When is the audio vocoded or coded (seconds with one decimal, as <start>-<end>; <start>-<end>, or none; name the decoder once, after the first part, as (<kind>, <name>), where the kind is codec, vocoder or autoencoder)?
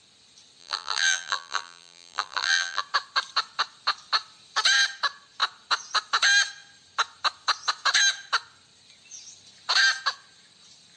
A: 0.6-2.8 (vocoder, BigVGAN v2)